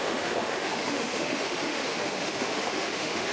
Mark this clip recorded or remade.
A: remade